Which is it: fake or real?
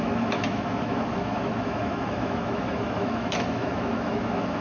fake